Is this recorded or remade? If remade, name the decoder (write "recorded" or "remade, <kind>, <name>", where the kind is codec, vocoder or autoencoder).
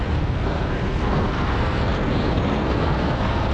remade, codec, SNAC